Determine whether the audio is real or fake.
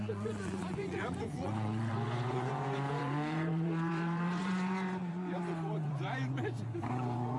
fake